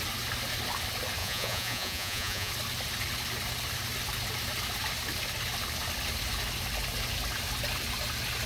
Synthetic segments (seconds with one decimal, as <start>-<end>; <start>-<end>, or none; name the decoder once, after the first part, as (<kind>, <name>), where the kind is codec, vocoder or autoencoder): 1.2-2.5 (vocoder, Vocos)